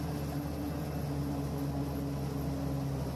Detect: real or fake real